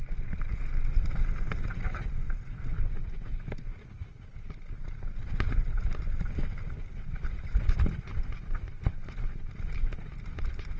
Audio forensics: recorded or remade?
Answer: recorded